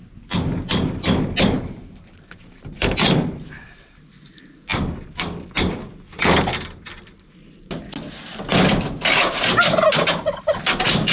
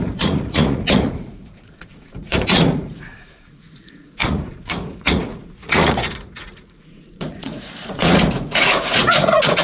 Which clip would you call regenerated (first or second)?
second